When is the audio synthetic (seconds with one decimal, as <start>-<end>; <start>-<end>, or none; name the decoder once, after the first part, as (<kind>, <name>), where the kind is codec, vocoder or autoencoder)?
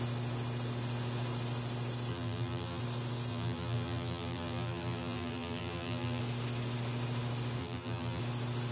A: 2.1-2.8 (vocoder, BigVGAN v2); 3.3-6.2; 7.6-8.2